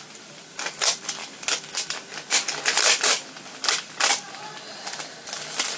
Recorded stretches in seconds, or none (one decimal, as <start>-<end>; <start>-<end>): 0.0-5.8